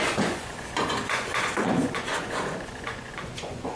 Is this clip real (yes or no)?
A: no